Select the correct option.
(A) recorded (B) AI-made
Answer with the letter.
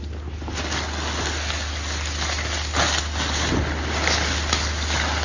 A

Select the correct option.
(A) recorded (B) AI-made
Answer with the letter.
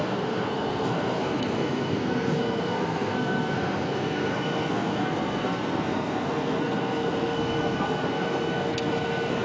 B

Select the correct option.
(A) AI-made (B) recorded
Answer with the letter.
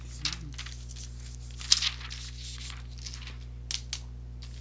B